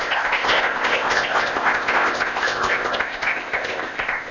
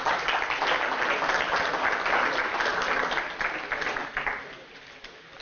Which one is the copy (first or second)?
first